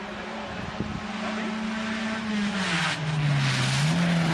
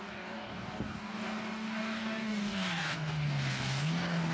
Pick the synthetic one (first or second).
second